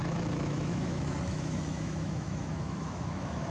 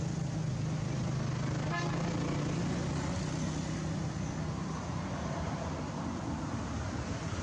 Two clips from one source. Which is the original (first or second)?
second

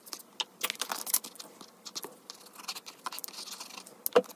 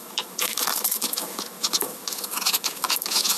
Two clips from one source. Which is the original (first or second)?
first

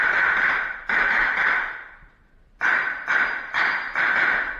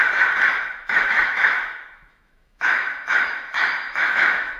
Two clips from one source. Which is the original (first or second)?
first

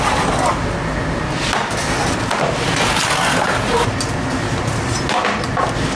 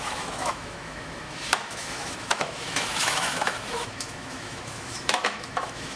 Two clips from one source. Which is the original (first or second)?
first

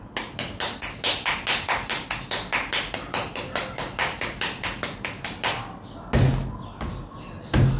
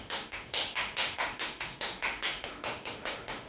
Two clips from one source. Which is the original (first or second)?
first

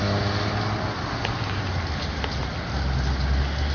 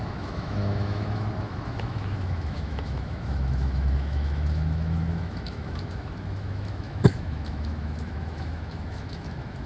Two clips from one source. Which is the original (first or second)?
first